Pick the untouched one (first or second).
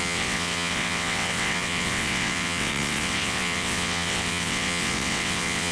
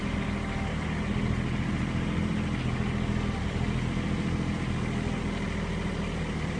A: second